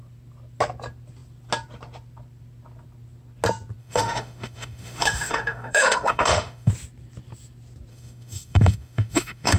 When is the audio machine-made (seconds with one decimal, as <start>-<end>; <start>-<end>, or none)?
3.8-6.7; 7.9-9.6